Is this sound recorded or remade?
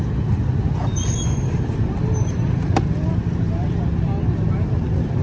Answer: recorded